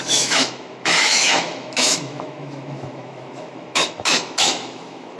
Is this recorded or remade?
remade